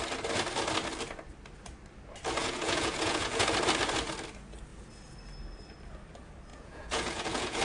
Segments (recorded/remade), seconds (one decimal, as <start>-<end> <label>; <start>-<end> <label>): 0.0-2.4 recorded; 2.4-3.4 remade; 3.4-6.5 recorded; 6.5-7.6 remade